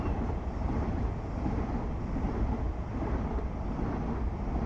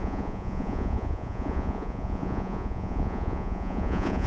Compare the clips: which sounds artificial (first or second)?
second